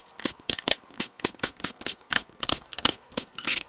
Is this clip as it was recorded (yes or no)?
no